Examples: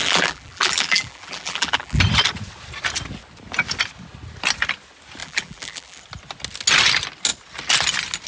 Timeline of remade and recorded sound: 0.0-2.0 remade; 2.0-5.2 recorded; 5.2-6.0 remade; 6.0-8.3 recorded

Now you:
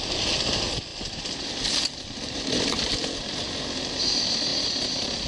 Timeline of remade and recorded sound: 0.0-5.3 remade

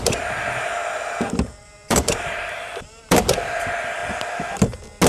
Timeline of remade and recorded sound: 0.0-0.8 remade; 0.8-1.6 recorded; 1.6-4.0 remade; 4.0-5.1 recorded

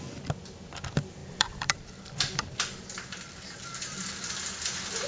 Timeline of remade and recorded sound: 0.0-1.2 recorded; 1.2-4.3 remade; 4.3-5.1 recorded

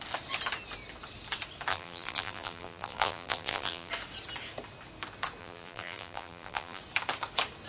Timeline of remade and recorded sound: 0.0-1.7 recorded; 1.7-3.9 remade; 3.9-5.4 recorded; 5.4-6.8 remade; 6.8-7.7 recorded

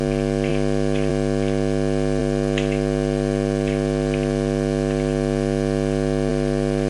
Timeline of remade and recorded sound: 0.0-6.9 recorded

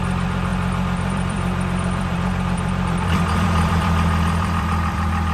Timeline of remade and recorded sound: 0.0-5.3 remade

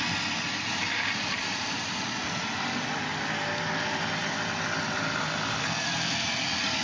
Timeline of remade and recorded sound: 0.0-6.8 recorded